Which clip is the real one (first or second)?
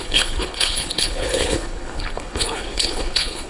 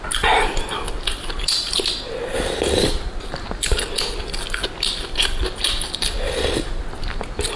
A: second